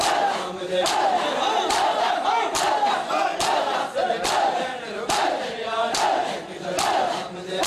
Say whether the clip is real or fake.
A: real